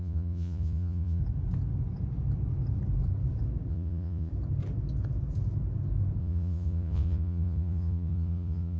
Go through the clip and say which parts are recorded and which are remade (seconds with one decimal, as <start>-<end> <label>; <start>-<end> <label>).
0.0-1.2 remade; 1.2-3.7 recorded; 3.7-4.3 remade; 4.3-6.2 recorded; 6.2-8.8 remade